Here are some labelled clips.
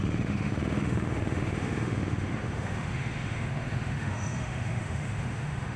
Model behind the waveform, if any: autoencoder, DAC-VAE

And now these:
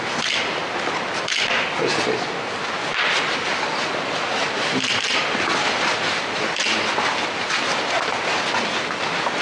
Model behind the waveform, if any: none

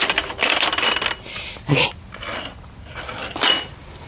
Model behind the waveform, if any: none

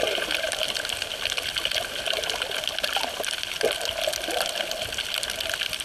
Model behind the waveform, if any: none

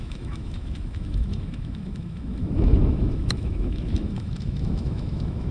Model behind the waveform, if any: autoencoder, DAC-VAE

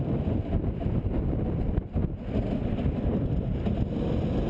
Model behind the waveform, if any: none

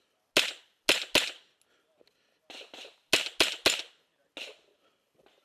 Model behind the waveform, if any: none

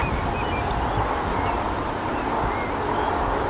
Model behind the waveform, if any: none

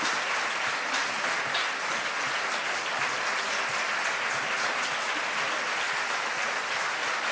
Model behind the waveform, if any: none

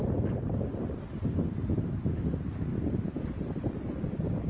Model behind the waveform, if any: none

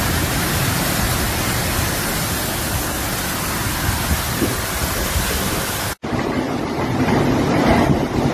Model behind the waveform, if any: none